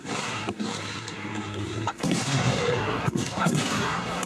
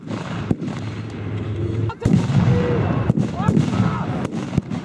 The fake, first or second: first